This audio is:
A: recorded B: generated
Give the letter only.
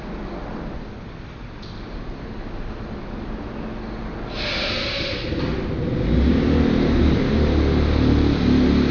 A